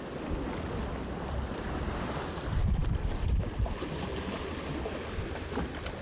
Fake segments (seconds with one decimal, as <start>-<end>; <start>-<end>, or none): none